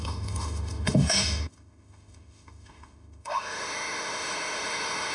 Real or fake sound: fake